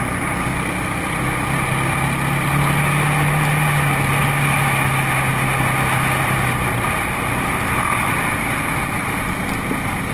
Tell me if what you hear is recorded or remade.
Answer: recorded